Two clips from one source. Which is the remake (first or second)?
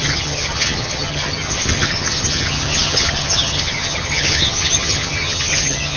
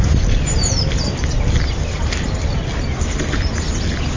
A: first